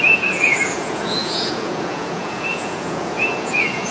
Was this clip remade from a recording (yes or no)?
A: yes